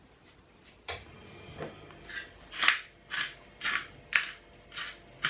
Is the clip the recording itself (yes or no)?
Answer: yes